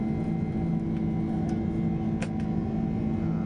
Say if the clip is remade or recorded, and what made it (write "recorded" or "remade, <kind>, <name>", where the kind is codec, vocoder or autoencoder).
recorded